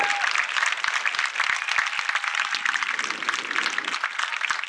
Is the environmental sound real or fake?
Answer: real